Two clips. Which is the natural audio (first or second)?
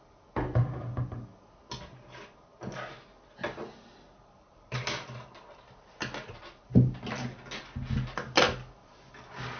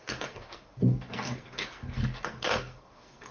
first